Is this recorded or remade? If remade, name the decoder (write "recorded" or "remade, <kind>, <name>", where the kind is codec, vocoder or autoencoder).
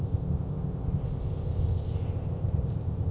remade, codec, ZipCodec